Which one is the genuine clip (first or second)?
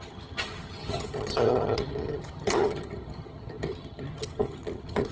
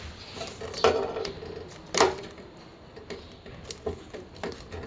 second